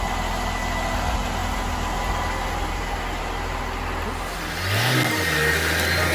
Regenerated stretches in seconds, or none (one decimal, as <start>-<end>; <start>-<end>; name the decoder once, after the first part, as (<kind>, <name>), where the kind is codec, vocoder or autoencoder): none